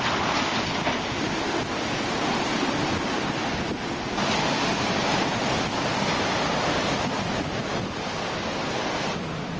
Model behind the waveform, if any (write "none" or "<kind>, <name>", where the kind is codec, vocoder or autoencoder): none